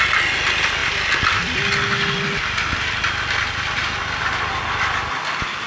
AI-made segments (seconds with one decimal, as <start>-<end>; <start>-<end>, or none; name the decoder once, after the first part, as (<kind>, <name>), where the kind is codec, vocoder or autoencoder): none